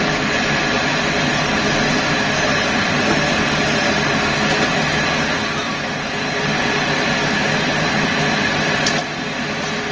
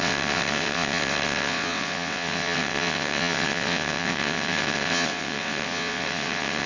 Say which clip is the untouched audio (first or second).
first